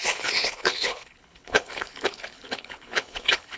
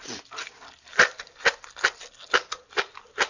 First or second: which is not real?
first